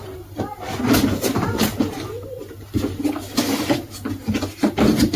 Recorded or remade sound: recorded